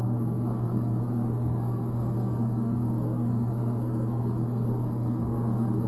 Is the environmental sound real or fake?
fake